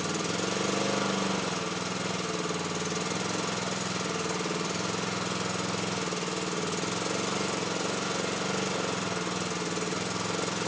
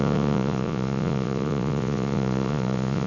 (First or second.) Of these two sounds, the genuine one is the first